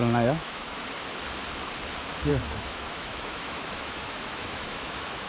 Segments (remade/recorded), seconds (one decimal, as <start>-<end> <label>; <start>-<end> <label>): 0.0-0.9 remade; 0.9-2.3 recorded; 2.3-5.3 remade